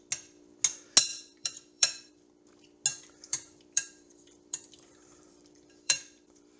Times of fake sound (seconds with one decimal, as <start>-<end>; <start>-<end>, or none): 1.1-2.1; 2.9-6.6